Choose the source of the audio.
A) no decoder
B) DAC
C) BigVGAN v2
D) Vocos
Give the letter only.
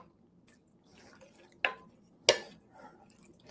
A